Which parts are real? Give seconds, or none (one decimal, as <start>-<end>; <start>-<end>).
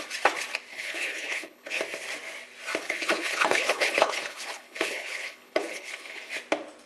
0.0-0.7; 1.8-2.8; 6.3-6.9